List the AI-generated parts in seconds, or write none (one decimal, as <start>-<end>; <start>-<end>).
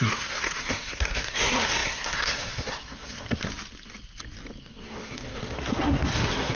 0.0-3.5; 4.6-6.6